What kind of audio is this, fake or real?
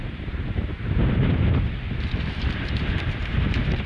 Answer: fake